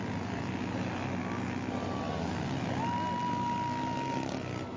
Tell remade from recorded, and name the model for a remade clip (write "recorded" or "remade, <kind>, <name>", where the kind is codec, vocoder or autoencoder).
recorded